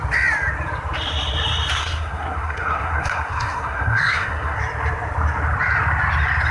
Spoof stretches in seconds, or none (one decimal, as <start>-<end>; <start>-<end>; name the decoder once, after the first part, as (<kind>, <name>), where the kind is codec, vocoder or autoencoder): 1.8-4.6 (codec, SNAC)